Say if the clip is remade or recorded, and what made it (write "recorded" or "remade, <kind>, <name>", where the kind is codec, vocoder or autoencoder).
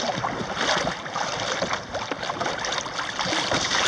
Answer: recorded